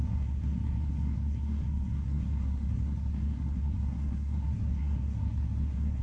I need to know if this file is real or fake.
fake